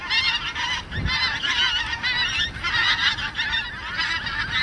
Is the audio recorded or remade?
recorded